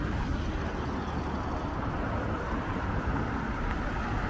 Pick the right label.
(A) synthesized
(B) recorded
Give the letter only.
B